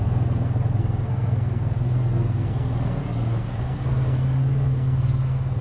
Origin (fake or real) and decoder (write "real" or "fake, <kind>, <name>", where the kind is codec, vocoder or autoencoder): fake, codec, SNAC